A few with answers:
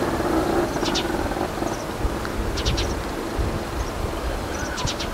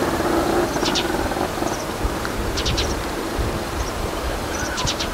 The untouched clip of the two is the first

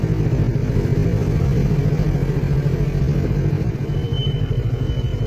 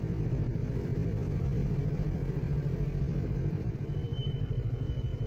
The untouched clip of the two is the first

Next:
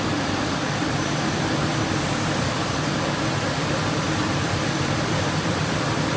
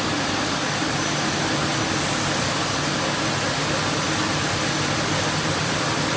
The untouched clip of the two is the second